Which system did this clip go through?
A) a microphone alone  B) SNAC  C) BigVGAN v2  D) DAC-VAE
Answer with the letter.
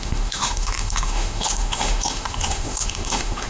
D